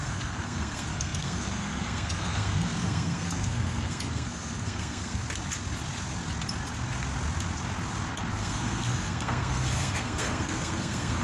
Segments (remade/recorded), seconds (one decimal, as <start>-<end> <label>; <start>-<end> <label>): 0.0-5.2 remade; 5.2-8.3 recorded; 8.3-11.2 remade